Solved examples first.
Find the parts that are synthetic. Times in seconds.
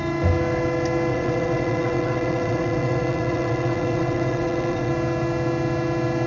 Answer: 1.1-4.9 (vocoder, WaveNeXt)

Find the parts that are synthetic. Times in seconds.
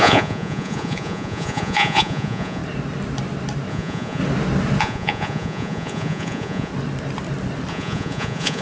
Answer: 0.0-2.6 (vocoder, Vocos); 3.7-4.2; 4.8-6.7; 7.7-8.6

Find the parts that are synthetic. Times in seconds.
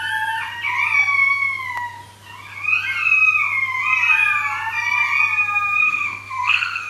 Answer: 5.8-6.9 (codec, SNAC)